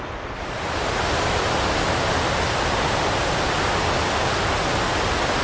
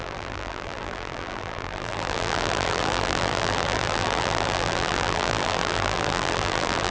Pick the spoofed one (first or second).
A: second